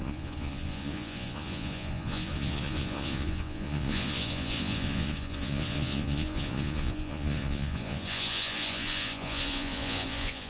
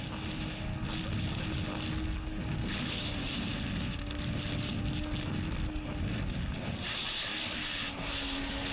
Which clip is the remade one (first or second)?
first